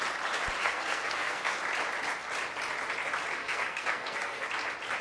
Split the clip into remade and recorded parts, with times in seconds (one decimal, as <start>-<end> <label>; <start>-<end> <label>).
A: 0.0-0.6 recorded; 0.6-1.6 remade; 1.6-3.4 recorded; 3.4-4.5 remade; 4.5-5.0 recorded